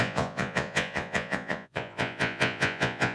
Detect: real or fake fake